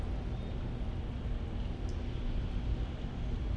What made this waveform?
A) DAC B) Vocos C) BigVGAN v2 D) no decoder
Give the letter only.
D